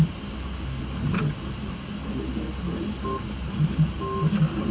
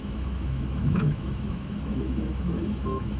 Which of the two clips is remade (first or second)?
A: second